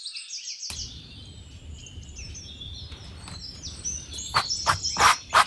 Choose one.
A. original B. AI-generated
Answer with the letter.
A